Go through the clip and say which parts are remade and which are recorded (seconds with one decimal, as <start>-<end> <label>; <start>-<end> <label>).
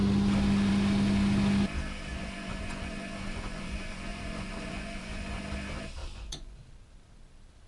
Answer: 0.0-2.1 recorded; 2.1-5.4 remade; 5.4-6.0 recorded; 6.0-6.6 remade; 6.6-7.7 recorded